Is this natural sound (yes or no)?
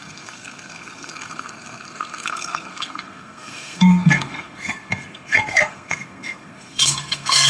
no